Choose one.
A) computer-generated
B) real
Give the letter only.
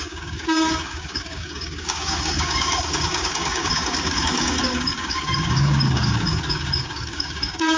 A